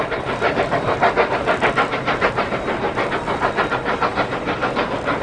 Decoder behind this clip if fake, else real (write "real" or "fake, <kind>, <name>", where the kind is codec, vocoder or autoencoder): real